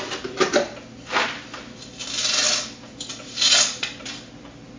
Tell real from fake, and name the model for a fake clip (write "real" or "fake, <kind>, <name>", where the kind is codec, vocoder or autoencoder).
real